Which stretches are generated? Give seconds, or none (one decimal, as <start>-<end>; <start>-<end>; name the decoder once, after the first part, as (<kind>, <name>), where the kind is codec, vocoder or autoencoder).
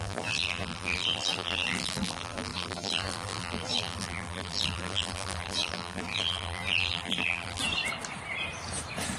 0.0-7.6 (vocoder, BigVGAN v2)